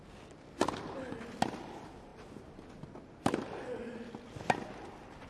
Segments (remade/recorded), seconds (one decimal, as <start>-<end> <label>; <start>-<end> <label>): 0.0-5.3 recorded